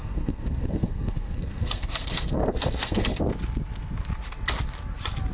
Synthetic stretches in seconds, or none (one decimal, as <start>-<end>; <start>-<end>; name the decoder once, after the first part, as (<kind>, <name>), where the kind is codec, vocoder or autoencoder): 0.0-3.2 (codec, SNAC)